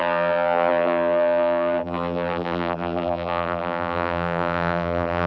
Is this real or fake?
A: fake